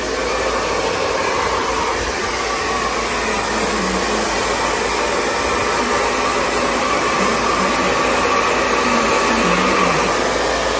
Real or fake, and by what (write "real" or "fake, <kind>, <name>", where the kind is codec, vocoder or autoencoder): real